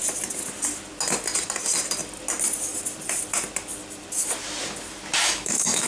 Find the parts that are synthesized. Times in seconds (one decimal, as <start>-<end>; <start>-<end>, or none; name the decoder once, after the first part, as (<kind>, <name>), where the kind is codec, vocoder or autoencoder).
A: 5.2-5.9 (autoencoder, DAC-VAE)